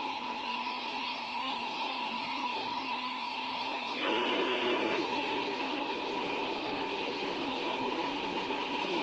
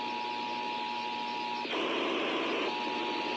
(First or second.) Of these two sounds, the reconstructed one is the first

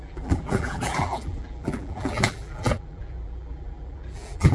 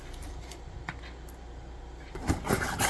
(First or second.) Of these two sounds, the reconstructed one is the first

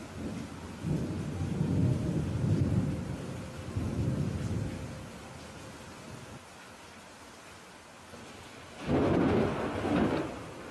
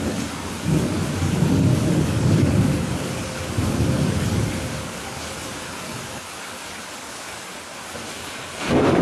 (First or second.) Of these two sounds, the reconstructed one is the second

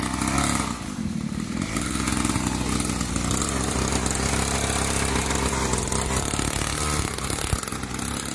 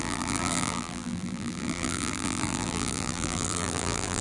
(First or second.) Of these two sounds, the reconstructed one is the second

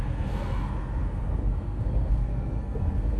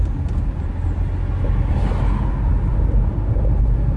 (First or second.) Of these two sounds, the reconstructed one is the first